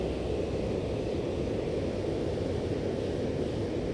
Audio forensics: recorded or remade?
recorded